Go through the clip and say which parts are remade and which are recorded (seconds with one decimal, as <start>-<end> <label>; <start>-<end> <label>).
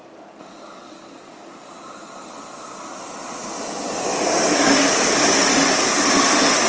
0.0-6.7 recorded